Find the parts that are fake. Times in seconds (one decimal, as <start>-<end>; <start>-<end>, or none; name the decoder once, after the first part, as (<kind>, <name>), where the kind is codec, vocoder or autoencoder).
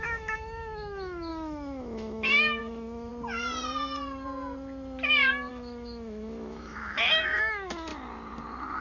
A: 0.0-3.1 (autoencoder, DAC-VAE); 5.5-7.9